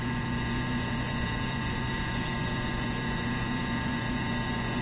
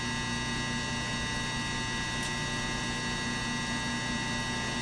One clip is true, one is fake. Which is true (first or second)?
second